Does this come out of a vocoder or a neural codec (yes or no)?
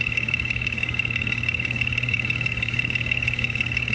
yes